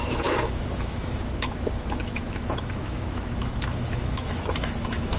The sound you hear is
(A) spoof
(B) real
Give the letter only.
A